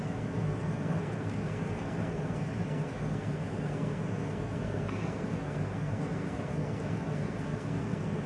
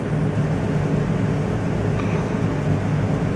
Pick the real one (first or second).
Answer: second